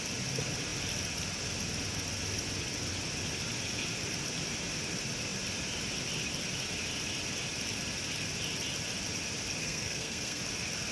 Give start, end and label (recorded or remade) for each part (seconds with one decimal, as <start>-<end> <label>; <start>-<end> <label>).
0.0-9.6 recorded; 9.6-10.4 remade; 10.4-10.9 recorded